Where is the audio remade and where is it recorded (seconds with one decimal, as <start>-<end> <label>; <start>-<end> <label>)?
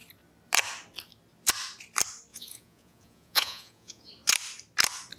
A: 0.0-2.3 recorded; 2.3-4.1 remade; 4.1-5.2 recorded